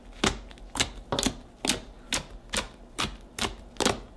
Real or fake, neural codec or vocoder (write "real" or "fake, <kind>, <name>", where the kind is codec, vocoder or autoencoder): real